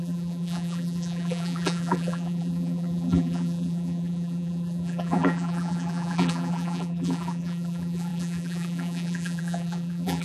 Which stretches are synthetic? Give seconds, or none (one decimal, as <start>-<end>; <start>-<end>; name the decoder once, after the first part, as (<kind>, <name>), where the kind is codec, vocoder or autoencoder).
0.0-10.2 (vocoder, BigVGAN v2)